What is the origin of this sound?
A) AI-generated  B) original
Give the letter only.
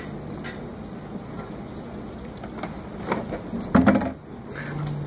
B